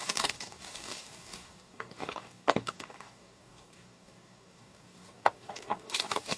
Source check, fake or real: fake